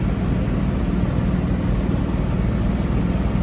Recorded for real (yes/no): yes